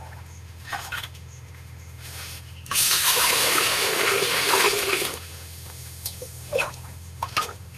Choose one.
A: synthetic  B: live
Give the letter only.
A